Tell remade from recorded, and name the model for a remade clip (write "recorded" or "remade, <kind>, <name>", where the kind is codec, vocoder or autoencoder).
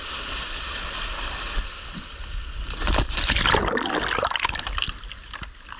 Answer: recorded